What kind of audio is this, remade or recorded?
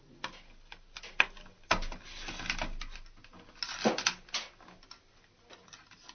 recorded